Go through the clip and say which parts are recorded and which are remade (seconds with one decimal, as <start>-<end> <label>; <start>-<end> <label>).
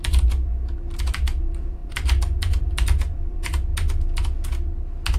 0.0-0.5 remade; 0.5-1.0 recorded; 1.0-3.7 remade; 3.7-5.2 recorded